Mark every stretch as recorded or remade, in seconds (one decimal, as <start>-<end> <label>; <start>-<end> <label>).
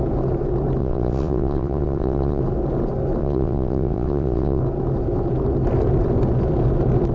0.0-0.8 recorded; 0.8-2.4 remade; 2.4-3.2 recorded; 3.2-4.6 remade; 4.6-7.1 recorded